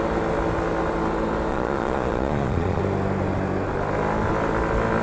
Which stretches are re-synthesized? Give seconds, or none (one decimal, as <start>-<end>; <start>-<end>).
1.5-2.8